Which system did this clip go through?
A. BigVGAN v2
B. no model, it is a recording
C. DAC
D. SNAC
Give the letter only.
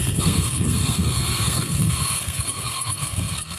D